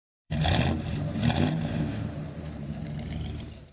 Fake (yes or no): yes